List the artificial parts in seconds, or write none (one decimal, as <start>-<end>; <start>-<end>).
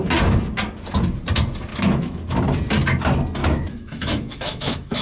1.7-2.2; 3.4-5.0